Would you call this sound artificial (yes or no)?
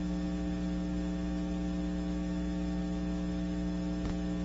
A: no